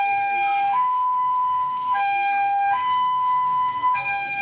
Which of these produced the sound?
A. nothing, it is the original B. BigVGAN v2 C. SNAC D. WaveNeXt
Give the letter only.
C